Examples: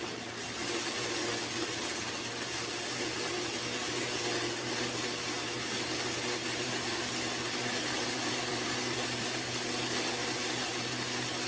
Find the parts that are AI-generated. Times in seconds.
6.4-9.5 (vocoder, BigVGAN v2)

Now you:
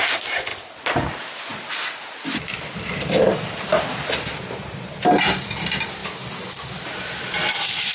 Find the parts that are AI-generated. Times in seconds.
0.0-0.5 (vocoder, BigVGAN v2); 1.1-3.7; 4.5-6.0; 7.2-7.9

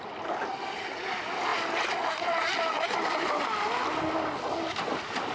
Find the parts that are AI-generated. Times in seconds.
none

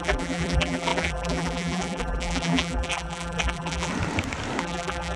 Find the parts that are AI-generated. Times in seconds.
0.0-3.9 (vocoder, BigVGAN v2); 4.6-5.2

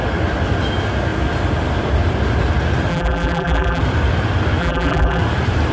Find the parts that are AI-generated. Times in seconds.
2.9-3.8 (vocoder, BigVGAN v2); 4.6-5.2

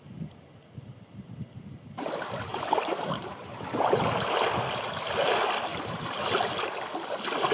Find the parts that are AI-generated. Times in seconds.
2.5-4.0 (vocoder, BigVGAN v2); 5.7-6.2

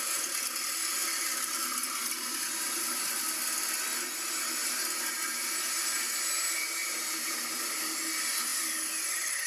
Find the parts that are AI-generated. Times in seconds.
1.0-1.6 (vocoder, BigVGAN v2); 2.0-3.2; 6.8-7.8

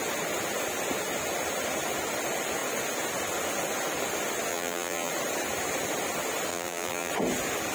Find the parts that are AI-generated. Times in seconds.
4.5-5.1 (vocoder, BigVGAN v2); 6.5-7.1